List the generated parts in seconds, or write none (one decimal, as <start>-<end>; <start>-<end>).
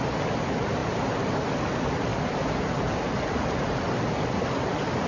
0.8-1.5; 2.1-2.8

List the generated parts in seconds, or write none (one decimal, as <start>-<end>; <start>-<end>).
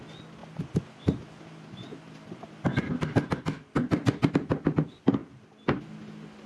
none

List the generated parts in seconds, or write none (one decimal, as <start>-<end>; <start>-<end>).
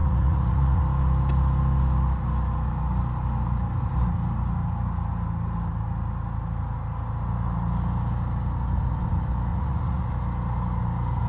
0.0-0.8; 9.5-10.1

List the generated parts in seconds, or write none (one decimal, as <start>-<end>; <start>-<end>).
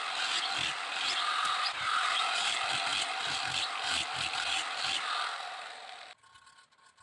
none